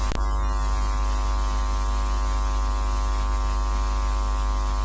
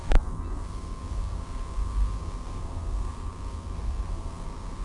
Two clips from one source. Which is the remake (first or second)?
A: second